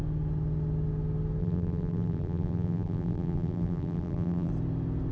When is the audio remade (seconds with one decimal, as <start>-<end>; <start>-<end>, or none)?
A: 1.4-4.5